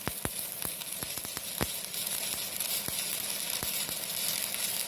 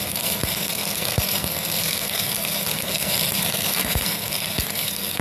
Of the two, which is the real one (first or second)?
first